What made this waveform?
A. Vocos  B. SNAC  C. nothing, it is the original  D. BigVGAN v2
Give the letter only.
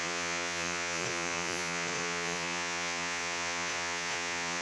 A